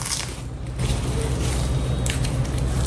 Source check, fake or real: real